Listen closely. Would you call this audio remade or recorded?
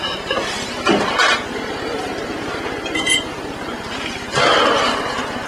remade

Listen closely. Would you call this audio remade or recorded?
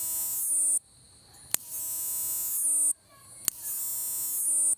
recorded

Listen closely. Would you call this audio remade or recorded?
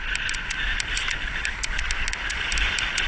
recorded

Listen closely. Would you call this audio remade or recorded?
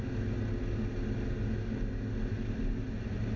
recorded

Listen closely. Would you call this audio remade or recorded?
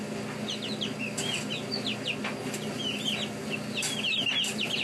recorded